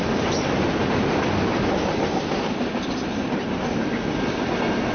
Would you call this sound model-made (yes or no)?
no